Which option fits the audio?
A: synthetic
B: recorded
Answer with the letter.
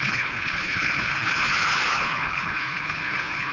A